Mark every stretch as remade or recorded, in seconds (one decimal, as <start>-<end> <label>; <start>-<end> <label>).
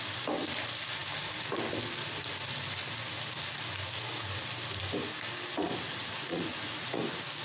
0.0-6.0 recorded; 6.0-7.0 remade; 7.0-7.4 recorded